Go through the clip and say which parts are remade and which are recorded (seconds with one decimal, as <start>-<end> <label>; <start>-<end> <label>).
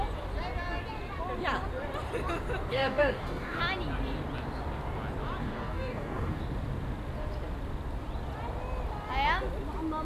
0.0-2.7 recorded; 2.7-3.6 remade; 3.6-5.4 recorded; 5.4-6.4 remade; 6.4-10.0 recorded